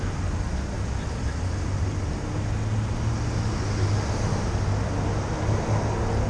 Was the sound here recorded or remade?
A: recorded